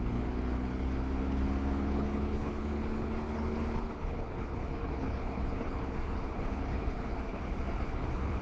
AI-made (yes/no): yes